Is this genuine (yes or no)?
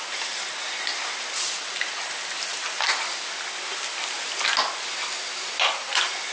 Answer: yes